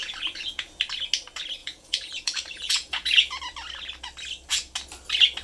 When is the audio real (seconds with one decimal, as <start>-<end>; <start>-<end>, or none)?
0.8-1.6; 3.4-5.4